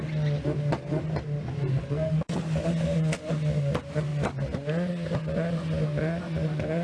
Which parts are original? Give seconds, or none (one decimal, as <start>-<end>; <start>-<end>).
0.0-1.8; 2.4-6.8